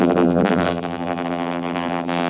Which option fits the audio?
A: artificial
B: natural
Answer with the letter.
A